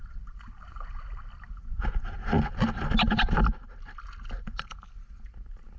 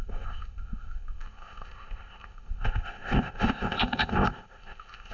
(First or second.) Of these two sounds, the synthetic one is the second